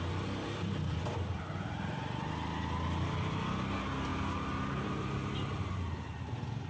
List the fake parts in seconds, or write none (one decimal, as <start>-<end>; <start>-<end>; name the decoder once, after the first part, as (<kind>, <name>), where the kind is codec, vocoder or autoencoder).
none